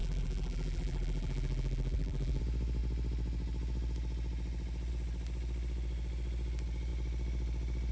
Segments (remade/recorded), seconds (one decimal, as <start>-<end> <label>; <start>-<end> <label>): 0.0-2.4 remade; 2.4-7.9 recorded